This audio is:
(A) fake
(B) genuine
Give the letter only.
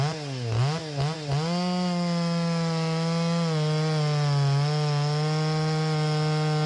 B